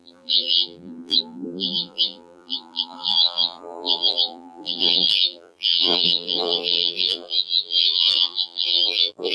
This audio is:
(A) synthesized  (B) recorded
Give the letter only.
A